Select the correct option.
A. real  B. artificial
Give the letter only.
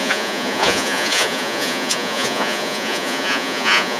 B